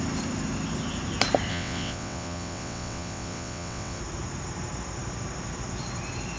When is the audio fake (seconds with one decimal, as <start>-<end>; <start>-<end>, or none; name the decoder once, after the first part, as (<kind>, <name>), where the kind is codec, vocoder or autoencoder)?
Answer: 1.5-4.0 (vocoder, WaveNeXt)